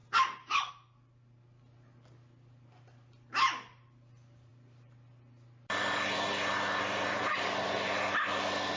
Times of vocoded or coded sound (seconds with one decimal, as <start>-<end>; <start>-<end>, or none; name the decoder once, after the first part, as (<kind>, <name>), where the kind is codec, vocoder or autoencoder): none